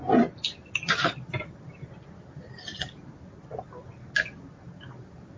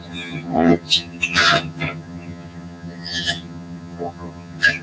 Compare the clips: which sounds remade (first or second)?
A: second